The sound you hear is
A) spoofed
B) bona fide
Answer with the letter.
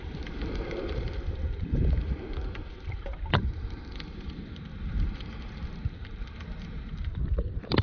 A